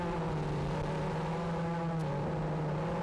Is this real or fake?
real